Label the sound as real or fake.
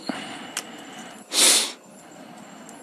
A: real